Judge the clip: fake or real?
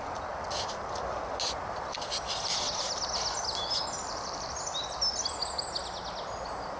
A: real